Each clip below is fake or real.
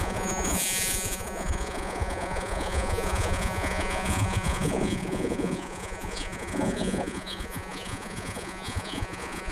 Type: fake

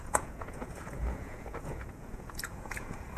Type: fake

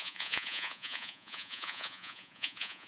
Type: fake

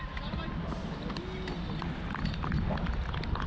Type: real